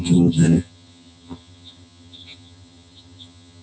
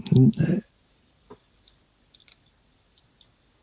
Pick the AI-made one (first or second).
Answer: first